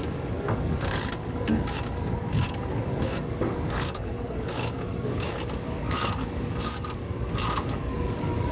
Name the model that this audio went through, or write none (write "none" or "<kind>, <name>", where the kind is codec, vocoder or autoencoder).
codec, DAC